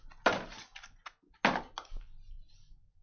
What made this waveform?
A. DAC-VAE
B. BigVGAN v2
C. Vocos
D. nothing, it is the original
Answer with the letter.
D